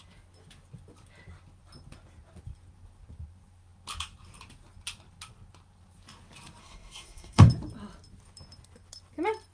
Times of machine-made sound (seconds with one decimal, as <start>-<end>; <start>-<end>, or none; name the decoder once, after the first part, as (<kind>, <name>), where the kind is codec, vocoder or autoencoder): 6.6-7.5 (codec, SNAC)